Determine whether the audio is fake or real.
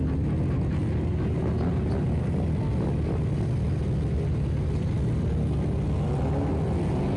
real